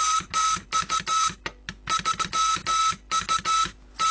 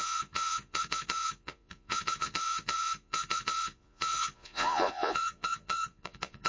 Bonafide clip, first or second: first